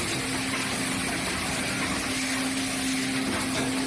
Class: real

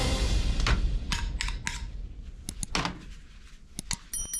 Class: real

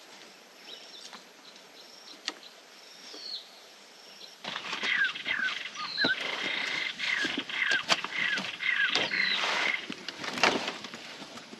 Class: fake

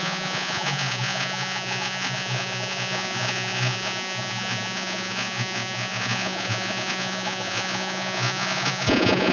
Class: fake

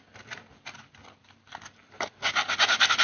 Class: real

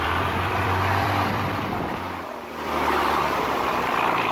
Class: fake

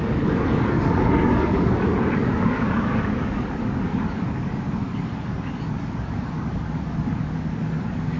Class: fake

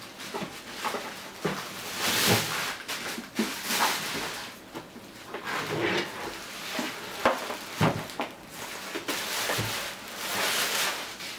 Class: real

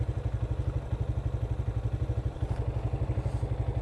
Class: real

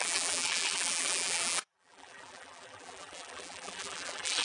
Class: fake